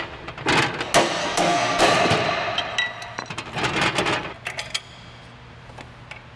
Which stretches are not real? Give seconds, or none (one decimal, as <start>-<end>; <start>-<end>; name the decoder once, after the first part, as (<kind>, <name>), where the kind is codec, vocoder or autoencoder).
1.2-1.8 (codec, SNAC)